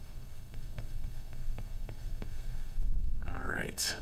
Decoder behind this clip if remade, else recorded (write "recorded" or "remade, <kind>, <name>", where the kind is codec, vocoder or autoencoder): remade, codec, SNAC